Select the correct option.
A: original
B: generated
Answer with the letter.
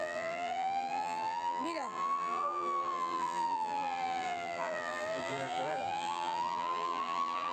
B